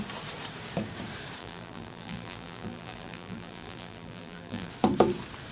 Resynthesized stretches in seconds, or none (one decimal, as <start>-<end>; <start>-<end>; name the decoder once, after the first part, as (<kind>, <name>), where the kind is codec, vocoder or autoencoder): 1.4-4.7 (vocoder, BigVGAN v2)